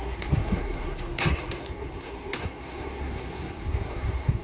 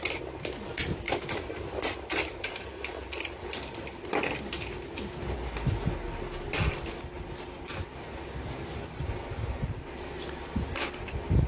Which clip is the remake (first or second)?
first